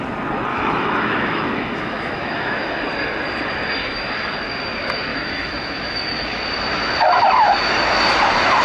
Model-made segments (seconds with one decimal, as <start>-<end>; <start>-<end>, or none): 0.5-2.8; 3.8-4.3; 5.1-6.4